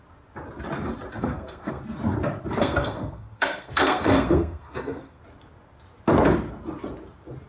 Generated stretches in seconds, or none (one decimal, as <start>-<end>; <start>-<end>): 1.2-1.8; 2.6-5.2